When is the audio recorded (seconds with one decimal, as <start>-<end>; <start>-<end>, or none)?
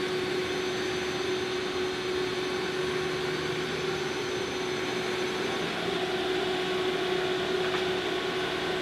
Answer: 0.0-8.8